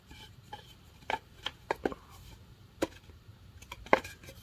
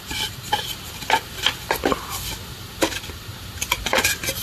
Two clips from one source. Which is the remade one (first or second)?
first